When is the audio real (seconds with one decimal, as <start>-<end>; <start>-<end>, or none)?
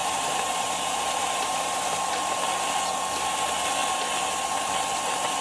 2.0-5.4